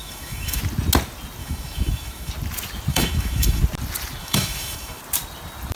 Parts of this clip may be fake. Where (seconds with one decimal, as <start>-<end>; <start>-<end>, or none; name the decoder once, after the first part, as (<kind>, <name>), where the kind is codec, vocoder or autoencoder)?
0.0-0.6 (autoencoder, DAC-VAE); 1.4-2.3; 2.9-3.6; 4.2-5.0